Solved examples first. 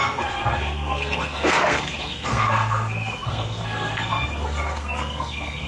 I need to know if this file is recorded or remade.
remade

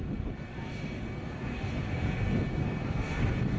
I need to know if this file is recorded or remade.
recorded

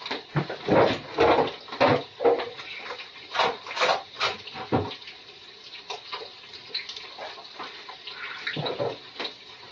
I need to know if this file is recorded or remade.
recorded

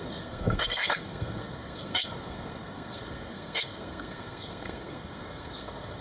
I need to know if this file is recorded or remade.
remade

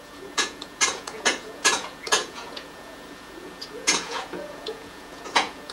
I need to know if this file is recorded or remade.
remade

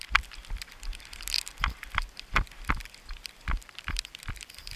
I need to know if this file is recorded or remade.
remade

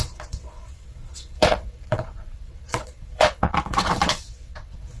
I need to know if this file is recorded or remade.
remade